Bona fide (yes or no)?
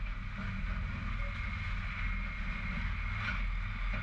yes